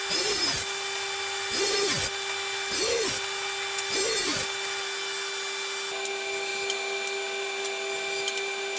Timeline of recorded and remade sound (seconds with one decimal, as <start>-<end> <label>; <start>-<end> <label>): 0.0-8.8 recorded